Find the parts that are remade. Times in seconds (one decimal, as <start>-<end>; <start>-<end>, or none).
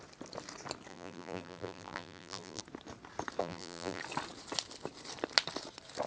0.9-2.6; 3.4-4.0